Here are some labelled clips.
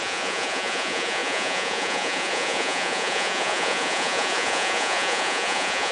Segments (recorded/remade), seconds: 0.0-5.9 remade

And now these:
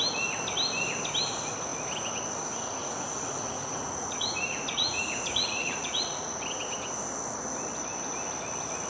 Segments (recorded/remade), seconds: 0.0-2.8 recorded; 2.8-6.4 remade; 6.4-8.9 recorded